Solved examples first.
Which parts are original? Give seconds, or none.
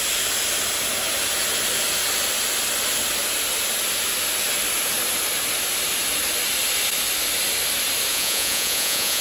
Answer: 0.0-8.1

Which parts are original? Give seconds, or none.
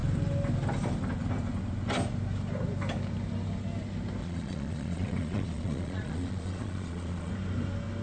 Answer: 0.0-4.2; 7.3-8.0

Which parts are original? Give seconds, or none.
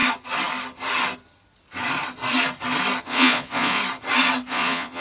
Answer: 0.0-3.0; 3.8-4.5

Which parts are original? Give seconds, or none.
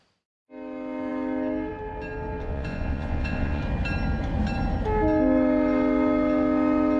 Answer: 0.0-2.4; 3.6-7.0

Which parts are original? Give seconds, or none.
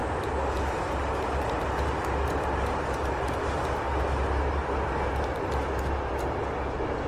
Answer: 0.0-7.1